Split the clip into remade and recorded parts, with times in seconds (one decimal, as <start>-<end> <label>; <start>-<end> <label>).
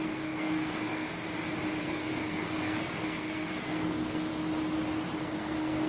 0.0-1.1 remade; 1.1-1.8 recorded; 1.8-4.3 remade; 4.3-5.2 recorded; 5.2-5.9 remade